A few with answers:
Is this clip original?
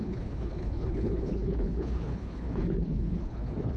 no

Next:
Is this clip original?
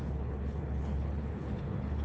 no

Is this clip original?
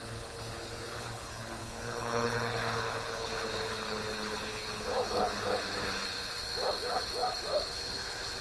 no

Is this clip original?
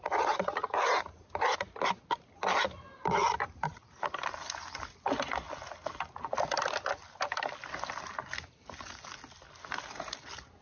yes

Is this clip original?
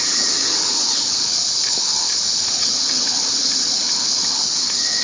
no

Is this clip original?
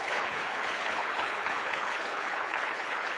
no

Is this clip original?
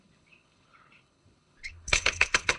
no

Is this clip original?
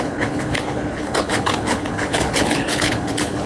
no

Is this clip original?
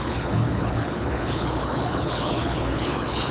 no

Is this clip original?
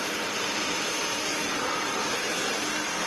yes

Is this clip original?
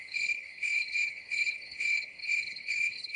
no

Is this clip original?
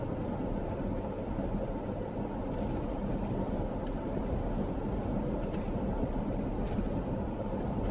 yes